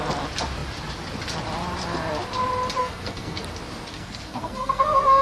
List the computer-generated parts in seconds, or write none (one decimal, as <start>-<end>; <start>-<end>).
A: 2.8-3.4; 3.9-5.2